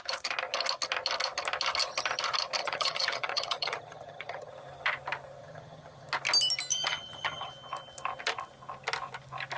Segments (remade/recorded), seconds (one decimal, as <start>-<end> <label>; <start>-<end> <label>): 0.0-2.6 recorded; 2.6-4.5 remade; 4.5-5.4 recorded; 5.4-6.1 remade; 6.1-6.7 recorded; 6.7-7.5 remade; 7.5-9.6 recorded